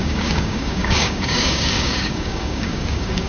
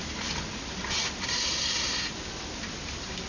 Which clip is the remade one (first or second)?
first